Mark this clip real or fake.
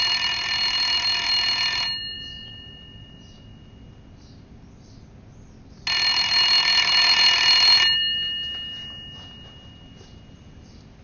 real